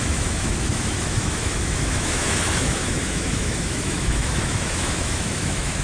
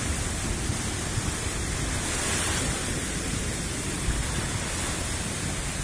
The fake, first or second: first